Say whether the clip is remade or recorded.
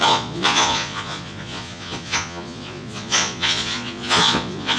remade